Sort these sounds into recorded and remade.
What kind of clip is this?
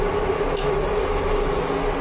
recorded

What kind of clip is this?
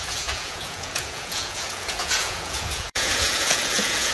remade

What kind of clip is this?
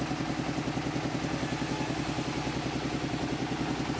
recorded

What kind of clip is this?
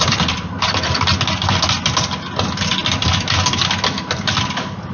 recorded